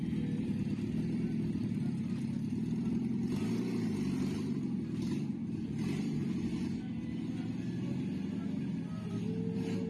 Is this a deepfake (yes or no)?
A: no